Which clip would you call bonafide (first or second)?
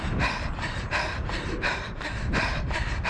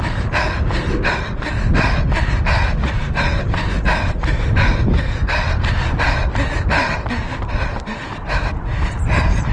second